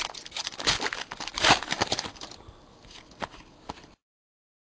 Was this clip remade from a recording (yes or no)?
no